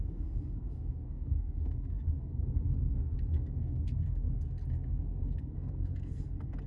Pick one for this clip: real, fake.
fake